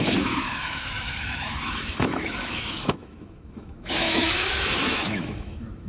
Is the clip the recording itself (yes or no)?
no